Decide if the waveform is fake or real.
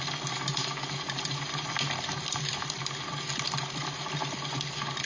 real